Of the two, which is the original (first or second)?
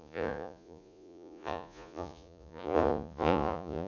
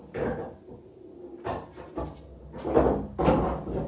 second